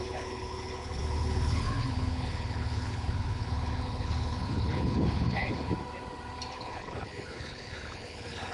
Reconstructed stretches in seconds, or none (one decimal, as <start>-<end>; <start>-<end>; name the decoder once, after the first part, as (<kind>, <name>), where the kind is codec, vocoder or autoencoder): 0.0-5.7 (codec, HILCodec); 6.5-8.5